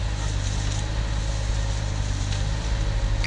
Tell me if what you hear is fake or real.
real